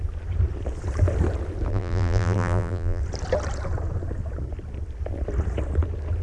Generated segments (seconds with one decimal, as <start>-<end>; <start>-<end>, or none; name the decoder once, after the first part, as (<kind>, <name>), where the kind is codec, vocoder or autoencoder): 1.7-3.0 (vocoder, BigVGAN v2)